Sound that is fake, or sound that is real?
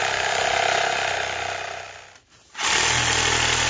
real